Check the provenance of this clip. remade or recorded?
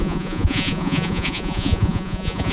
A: remade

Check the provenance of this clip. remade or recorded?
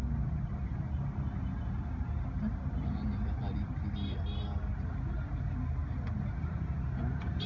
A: recorded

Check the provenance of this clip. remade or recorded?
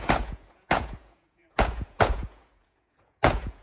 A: remade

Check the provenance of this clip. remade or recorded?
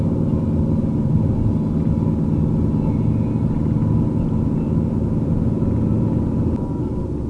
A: recorded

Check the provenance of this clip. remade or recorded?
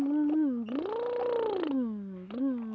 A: recorded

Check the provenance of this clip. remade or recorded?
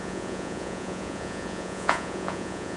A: remade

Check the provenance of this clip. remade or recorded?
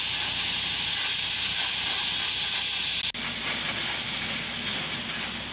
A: recorded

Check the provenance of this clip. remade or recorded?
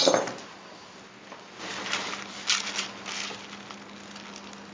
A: recorded